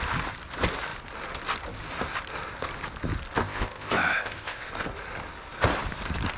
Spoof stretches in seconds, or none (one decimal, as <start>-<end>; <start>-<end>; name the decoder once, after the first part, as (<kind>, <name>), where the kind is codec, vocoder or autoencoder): 3.4-4.7 (codec, ZipCodec)